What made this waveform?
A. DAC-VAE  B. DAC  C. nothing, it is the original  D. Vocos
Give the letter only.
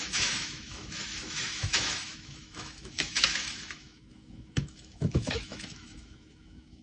A